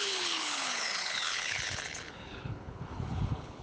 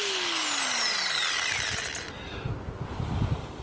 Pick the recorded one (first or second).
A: second